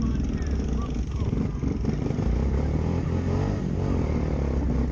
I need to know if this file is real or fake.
real